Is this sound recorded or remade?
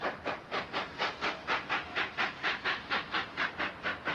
recorded